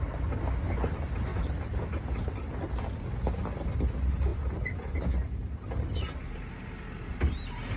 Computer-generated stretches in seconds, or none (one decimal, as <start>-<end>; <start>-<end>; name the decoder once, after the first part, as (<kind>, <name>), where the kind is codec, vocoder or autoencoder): 1.3-2.8 (vocoder, BigVGAN v2); 4.3-4.9